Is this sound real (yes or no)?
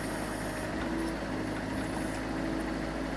yes